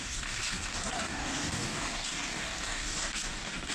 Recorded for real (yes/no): no